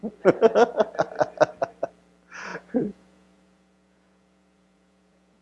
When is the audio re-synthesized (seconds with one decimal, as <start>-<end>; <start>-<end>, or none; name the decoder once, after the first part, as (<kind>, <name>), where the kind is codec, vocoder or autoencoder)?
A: 2.5-5.4 (vocoder, Vocos)